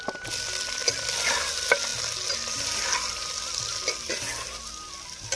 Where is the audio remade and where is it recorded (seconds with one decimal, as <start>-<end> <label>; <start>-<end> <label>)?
0.0-5.4 recorded